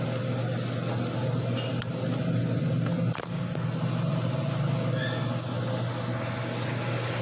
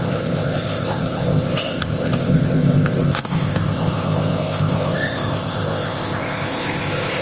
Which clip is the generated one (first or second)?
second